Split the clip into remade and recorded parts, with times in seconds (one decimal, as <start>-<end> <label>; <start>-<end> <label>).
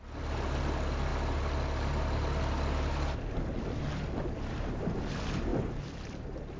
0.0-6.6 recorded